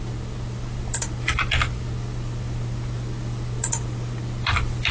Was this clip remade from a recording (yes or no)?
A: no